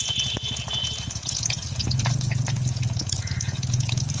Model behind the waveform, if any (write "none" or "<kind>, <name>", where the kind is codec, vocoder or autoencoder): vocoder, Vocos